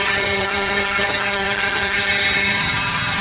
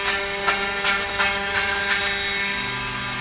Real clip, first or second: second